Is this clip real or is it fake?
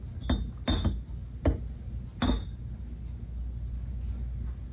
real